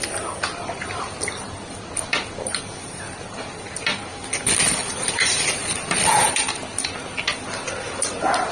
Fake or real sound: real